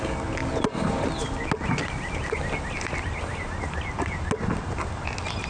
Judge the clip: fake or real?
real